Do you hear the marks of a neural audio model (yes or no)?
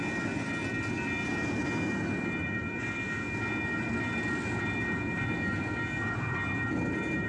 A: no